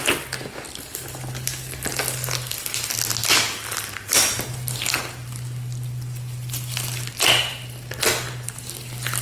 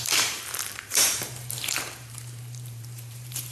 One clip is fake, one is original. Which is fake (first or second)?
second